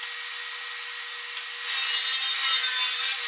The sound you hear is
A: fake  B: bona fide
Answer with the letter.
B